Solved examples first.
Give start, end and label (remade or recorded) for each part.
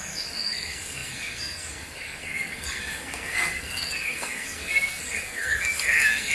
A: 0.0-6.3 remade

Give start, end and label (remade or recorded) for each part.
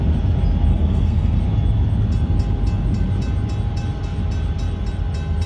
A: 0.0-0.7 recorded; 0.7-1.4 remade; 1.4-5.5 recorded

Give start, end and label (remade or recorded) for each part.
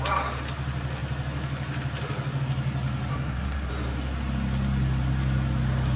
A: 0.0-3.1 recorded; 3.1-3.7 remade; 3.7-6.0 recorded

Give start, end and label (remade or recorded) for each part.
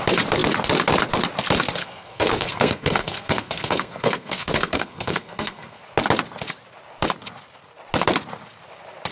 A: 0.0-1.8 recorded; 1.8-5.8 remade; 5.8-9.1 recorded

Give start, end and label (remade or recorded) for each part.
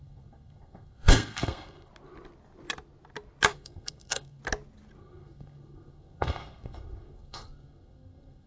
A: 0.0-1.9 remade; 1.9-3.5 recorded; 3.5-4.4 remade; 4.4-5.0 recorded; 5.0-8.5 remade